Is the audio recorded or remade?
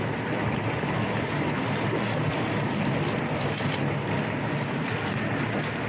recorded